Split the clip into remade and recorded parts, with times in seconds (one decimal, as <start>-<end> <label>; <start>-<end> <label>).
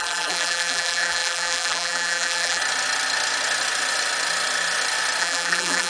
0.0-2.6 remade; 2.6-5.2 recorded; 5.2-5.9 remade